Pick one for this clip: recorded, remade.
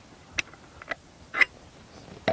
recorded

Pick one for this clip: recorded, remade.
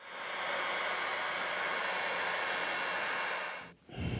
recorded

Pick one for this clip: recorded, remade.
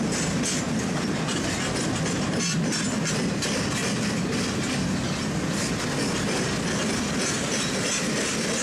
recorded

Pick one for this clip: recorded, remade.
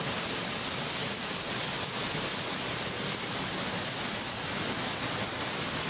recorded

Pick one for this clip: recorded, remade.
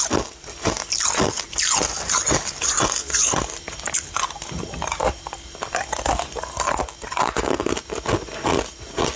recorded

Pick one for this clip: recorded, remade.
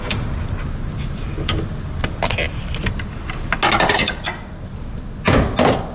recorded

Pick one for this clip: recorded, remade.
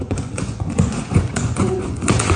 remade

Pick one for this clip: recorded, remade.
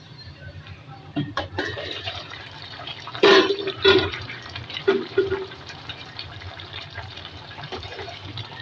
remade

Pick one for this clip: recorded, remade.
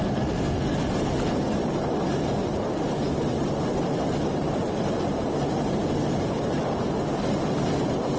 recorded